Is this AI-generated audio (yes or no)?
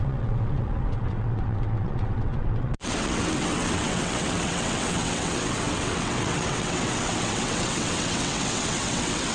yes